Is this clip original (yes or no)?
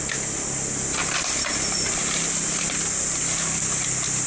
yes